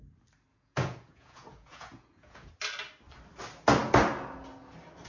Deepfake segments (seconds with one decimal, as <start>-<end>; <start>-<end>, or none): 0.5-2.5